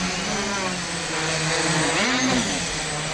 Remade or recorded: recorded